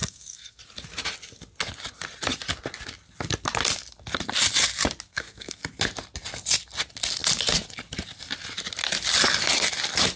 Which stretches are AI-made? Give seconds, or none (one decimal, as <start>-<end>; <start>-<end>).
0.0-0.6; 5.1-5.6